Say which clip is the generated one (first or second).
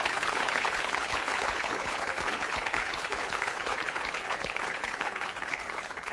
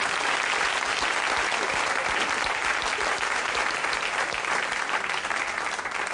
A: first